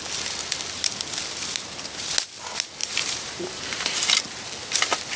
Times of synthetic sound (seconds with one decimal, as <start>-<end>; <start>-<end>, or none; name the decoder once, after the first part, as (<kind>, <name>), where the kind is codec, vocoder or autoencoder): 2.8-4.2 (vocoder, BigVGAN v2)